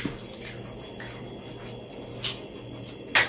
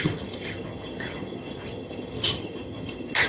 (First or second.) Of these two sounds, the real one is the first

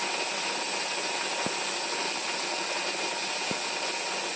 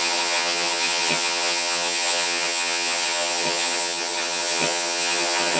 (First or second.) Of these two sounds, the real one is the first